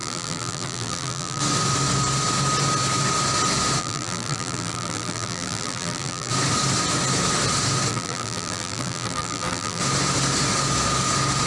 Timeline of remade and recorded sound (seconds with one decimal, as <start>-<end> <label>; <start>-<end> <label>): 0.0-1.4 remade; 1.4-3.8 recorded; 3.8-6.3 remade; 6.3-7.9 recorded; 7.9-9.8 remade; 9.8-11.5 recorded